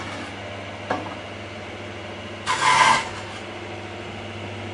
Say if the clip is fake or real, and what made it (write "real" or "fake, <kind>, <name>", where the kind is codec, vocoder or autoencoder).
real